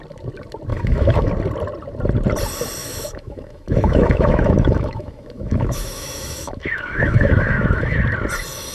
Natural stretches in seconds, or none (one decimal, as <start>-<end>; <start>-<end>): 0.0-0.7; 1.3-2.8; 8.0-8.7